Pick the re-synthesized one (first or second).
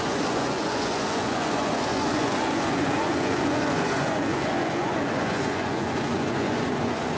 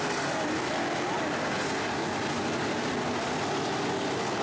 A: first